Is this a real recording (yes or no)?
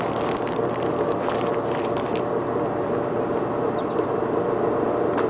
no